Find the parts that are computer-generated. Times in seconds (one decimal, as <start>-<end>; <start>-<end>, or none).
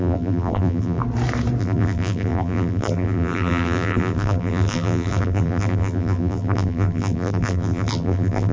0.0-1.0; 1.6-8.5